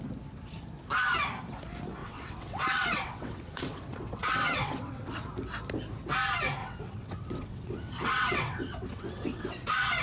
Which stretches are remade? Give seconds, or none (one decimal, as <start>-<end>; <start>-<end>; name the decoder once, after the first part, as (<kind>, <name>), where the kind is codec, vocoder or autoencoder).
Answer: 2.0-5.1 (vocoder, WaveNeXt); 6.6-10.0